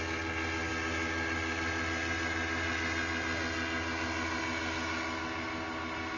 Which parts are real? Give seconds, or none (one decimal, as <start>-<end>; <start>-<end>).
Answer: 0.0-6.2